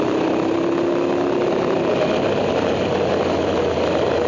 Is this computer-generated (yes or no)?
no